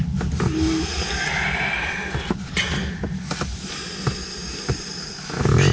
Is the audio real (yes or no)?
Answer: yes